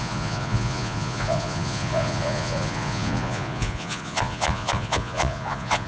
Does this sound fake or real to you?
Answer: fake